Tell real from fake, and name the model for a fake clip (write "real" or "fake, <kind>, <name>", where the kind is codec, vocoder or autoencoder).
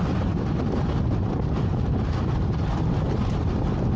real